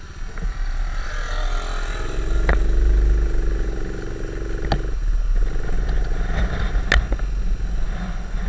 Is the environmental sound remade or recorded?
recorded